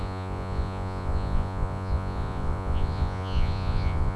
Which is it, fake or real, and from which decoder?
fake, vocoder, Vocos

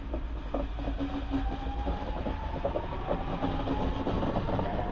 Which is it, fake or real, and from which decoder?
real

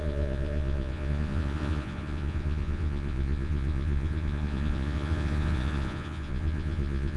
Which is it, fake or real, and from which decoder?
fake, vocoder, Vocos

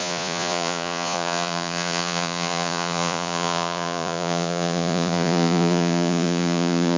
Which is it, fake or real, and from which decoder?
fake, vocoder, Vocos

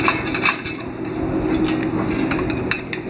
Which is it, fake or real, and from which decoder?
real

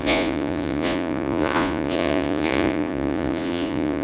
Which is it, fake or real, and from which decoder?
fake, vocoder, Vocos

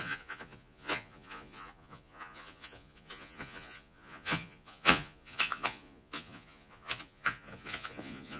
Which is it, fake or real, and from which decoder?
fake, vocoder, Vocos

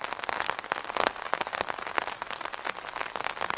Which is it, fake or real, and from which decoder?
real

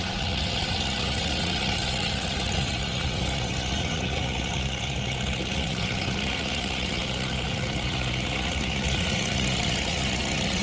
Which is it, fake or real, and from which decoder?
fake, vocoder, Vocos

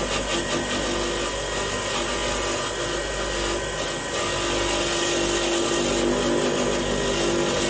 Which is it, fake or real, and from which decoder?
real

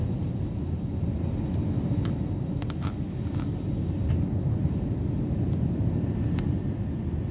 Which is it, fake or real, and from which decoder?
real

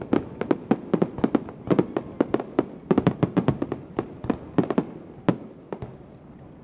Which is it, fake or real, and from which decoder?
real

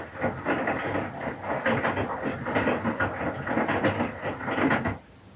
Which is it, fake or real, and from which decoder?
real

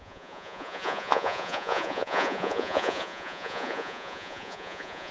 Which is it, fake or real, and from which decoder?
fake, vocoder, Vocos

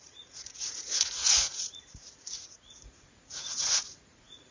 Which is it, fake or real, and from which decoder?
fake, vocoder, Vocos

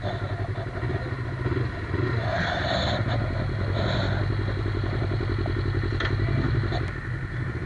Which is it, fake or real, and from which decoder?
real